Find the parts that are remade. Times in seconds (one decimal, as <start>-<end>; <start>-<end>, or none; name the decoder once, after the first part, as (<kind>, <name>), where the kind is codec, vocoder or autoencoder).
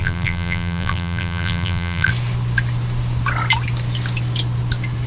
0.0-2.1 (vocoder, BigVGAN v2)